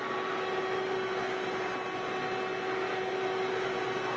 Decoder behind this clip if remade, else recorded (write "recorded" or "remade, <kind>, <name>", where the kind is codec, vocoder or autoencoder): recorded